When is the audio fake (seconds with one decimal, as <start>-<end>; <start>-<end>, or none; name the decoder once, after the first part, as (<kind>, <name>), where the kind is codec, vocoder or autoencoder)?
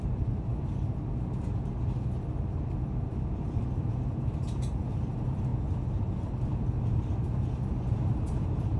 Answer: 0.0-0.5 (vocoder, BigVGAN v2); 3.6-5.5; 6.8-8.8